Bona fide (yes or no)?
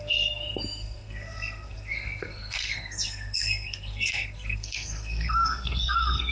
no